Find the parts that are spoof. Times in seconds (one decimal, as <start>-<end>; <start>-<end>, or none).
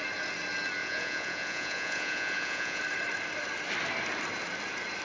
0.8-2.8